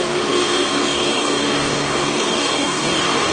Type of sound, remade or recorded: remade